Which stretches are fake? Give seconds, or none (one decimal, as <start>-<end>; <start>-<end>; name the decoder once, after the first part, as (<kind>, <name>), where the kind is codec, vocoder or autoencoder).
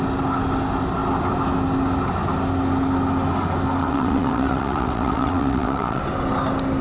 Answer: 3.8-6.0 (vocoder, WaveNeXt)